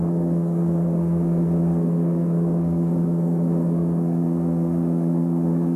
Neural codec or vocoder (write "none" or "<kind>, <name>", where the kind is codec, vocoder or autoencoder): codec, SNAC